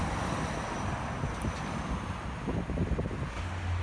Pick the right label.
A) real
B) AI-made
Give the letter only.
A